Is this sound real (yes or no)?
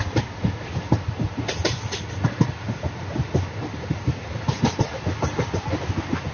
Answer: no